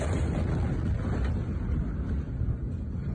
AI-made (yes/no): no